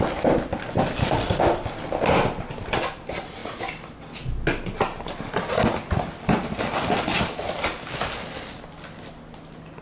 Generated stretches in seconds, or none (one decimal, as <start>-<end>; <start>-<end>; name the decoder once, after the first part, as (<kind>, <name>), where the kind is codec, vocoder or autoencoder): none